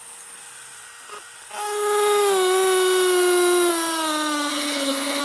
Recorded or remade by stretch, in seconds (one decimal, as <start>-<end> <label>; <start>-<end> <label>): 0.0-4.5 recorded; 4.5-5.2 remade